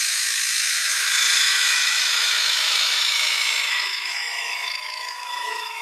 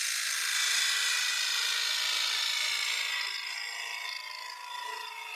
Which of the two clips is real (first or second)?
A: second